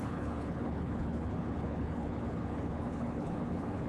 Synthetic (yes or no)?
yes